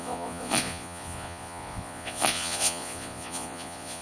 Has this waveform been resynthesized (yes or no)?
yes